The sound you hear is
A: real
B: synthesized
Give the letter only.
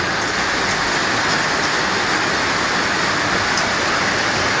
A